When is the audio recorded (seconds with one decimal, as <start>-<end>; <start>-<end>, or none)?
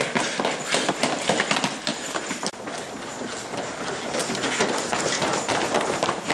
0.0-1.9; 2.5-4.2